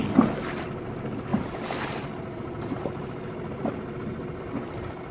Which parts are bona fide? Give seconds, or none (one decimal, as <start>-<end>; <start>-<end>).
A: 0.0-5.1